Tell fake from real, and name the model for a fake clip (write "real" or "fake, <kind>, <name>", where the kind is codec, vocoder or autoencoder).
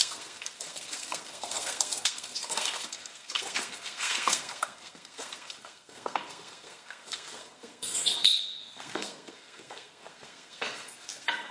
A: fake, codec, SNAC